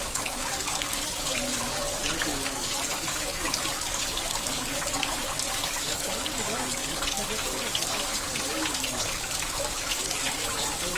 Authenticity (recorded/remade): remade